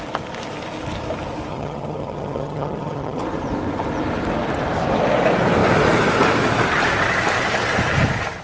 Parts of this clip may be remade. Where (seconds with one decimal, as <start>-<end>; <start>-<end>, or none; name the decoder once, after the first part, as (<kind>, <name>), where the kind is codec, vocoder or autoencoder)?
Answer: 1.5-3.2 (vocoder, HiFi-GAN)